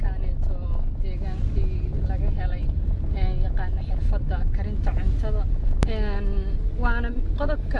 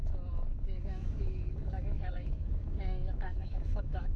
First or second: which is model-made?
second